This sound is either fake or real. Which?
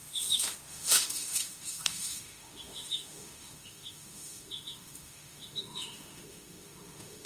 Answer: fake